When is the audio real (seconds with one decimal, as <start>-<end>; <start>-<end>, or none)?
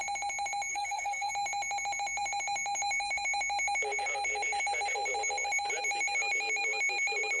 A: 0.0-0.7; 1.3-7.4